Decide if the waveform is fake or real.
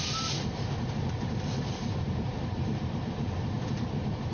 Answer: fake